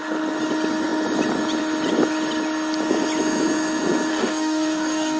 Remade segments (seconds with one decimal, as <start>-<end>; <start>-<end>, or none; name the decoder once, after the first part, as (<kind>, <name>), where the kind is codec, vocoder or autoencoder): 4.1-5.2 (codec, DAC)